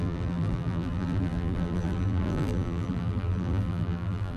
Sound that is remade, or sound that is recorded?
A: remade